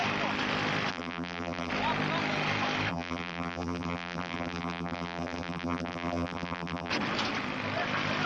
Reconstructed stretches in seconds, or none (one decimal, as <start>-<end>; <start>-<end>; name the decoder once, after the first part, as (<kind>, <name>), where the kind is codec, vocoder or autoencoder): 0.9-1.7 (vocoder, BigVGAN v2); 2.9-6.9